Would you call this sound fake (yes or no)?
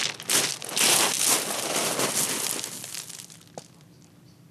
no